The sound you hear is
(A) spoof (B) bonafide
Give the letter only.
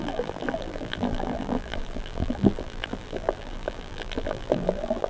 A